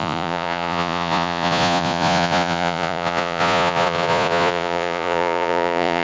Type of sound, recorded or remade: remade